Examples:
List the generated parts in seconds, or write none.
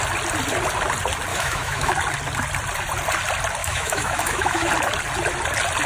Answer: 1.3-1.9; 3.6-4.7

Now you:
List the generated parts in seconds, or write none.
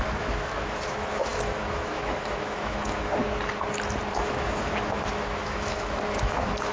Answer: 0.0-3.2; 4.1-6.7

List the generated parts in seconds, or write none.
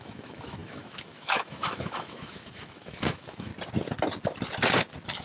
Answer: 0.0-3.5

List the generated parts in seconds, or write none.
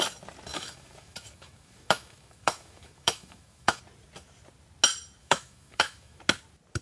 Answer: 0.5-3.8; 5.2-6.2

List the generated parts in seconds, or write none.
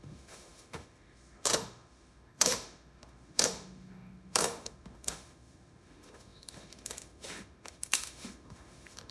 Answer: 0.0-9.1